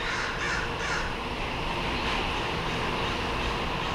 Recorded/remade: recorded